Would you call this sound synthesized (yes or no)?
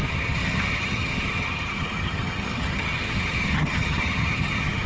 yes